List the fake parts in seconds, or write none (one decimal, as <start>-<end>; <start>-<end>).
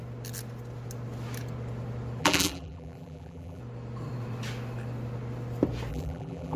2.2-3.6; 5.9-6.6